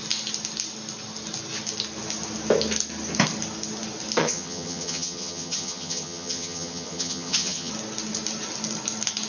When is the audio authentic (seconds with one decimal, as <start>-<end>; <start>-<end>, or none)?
0.0-4.2; 7.7-9.3